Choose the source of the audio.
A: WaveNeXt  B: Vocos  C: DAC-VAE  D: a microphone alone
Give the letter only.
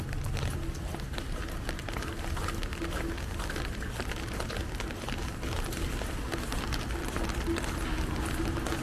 D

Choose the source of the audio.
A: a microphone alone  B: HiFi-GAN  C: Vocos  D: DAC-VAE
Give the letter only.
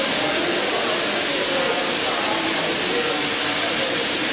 A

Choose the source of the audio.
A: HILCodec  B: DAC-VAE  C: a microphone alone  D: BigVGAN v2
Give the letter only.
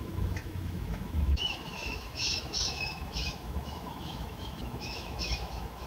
B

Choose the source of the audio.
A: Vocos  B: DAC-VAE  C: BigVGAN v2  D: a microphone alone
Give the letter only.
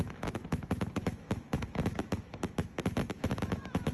B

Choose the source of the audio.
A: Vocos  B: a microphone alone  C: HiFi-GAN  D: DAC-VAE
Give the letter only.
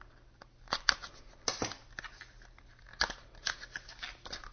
B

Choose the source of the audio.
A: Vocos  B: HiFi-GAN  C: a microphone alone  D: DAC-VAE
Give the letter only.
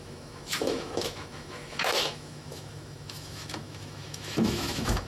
D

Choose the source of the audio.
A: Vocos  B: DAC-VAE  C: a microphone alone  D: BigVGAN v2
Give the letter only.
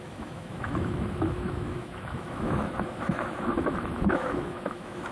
B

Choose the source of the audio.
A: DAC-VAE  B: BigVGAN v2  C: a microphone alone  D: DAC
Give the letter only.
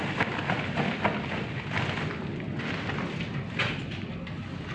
C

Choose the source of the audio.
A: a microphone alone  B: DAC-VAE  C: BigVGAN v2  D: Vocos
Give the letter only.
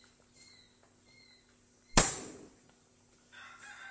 A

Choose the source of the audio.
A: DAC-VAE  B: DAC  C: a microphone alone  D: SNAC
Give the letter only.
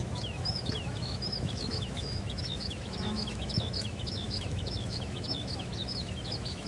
A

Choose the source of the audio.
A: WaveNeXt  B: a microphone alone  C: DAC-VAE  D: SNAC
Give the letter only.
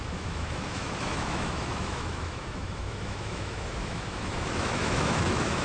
C